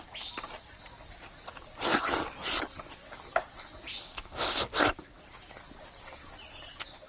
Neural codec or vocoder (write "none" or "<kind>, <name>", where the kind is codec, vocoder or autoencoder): none